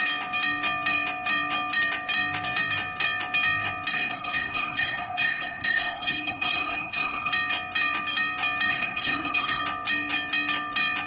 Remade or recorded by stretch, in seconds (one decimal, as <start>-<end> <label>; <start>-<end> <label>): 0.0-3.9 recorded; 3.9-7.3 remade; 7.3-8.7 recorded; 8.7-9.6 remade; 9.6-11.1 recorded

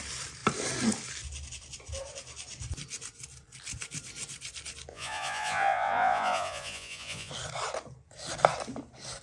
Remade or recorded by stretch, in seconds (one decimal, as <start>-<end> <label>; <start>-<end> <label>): 0.0-4.9 recorded; 4.9-7.3 remade; 7.3-9.2 recorded

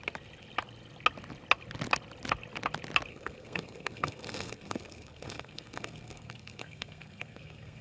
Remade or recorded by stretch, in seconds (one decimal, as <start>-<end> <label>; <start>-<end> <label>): 0.0-3.1 recorded; 3.1-7.8 remade